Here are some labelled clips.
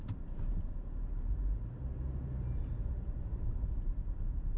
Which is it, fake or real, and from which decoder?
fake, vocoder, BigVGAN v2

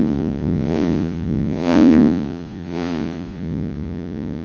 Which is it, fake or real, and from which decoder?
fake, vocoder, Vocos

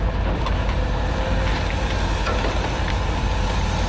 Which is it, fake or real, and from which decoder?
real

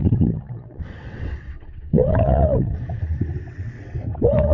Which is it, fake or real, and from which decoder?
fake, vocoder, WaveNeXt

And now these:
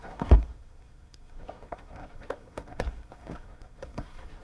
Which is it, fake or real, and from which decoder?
fake, codec, SNAC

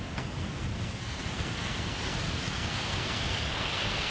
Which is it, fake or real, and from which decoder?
fake, codec, SNAC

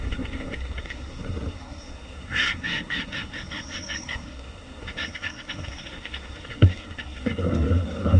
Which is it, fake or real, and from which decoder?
fake, codec, SNAC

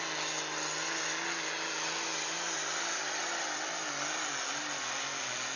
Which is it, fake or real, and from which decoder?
real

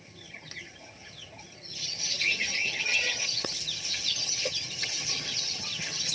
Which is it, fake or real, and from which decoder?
fake, vocoder, HiFi-GAN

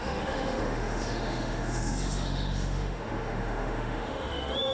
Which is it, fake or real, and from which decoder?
fake, autoencoder, DAC-VAE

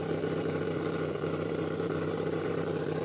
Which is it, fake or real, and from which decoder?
fake, vocoder, BigVGAN v2